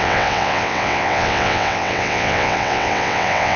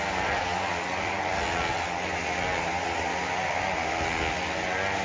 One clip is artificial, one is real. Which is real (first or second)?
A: second